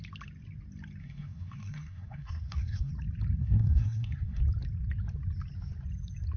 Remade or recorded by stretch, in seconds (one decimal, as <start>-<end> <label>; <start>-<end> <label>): 0.0-1.0 recorded; 1.0-2.9 remade; 2.9-3.4 recorded; 3.4-4.4 remade; 4.4-6.4 recorded